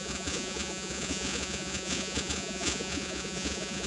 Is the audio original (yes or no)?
no